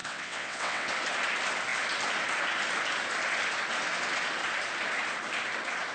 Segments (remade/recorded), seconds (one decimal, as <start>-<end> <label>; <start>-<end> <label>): 0.0-0.9 remade; 0.9-5.9 recorded